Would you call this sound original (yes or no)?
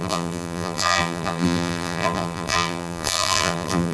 no